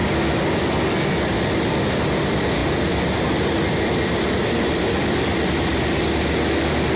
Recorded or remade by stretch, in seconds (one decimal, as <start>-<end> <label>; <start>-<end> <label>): 0.0-7.0 recorded